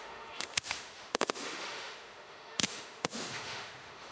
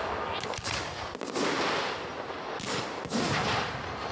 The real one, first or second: second